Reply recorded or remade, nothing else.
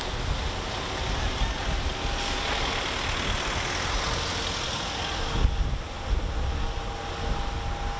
recorded